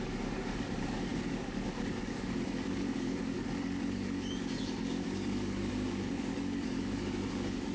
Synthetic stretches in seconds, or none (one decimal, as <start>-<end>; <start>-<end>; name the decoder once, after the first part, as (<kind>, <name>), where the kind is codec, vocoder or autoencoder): 0.0-7.7 (codec, DAC)